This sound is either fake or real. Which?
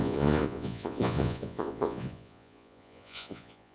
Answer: fake